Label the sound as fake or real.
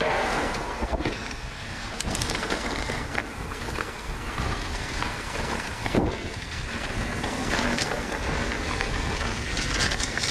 fake